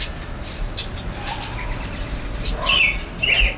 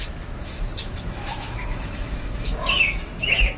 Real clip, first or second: first